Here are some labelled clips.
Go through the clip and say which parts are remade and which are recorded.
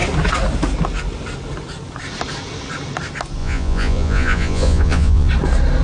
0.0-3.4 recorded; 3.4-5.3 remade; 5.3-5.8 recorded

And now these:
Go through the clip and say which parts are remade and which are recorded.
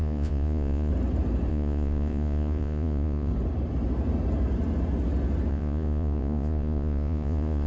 0.0-0.9 remade; 0.9-1.5 recorded; 1.5-3.3 remade; 3.3-5.5 recorded; 5.5-7.7 remade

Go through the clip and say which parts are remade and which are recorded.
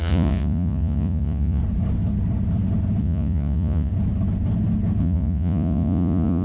0.0-1.6 remade; 1.6-3.0 recorded; 3.0-3.9 remade; 3.9-5.0 recorded; 5.0-6.4 remade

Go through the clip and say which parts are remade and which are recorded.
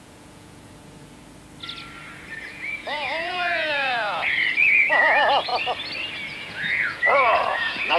0.0-1.2 remade; 1.2-2.3 recorded; 2.3-5.5 remade; 5.5-6.4 recorded; 6.4-8.0 remade